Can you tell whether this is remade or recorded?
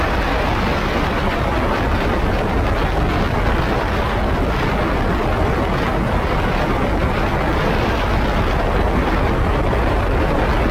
recorded